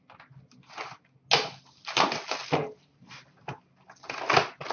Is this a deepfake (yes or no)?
no